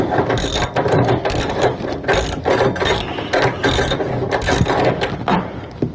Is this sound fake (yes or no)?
no